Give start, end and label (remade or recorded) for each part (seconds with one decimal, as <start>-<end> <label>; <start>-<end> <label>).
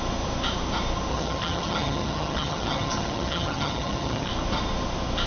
0.0-1.1 recorded; 1.1-4.3 remade; 4.3-5.3 recorded